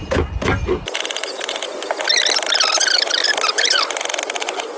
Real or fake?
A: real